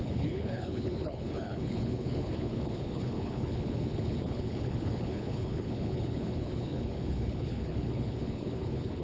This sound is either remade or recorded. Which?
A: remade